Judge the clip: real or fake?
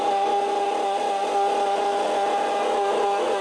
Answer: real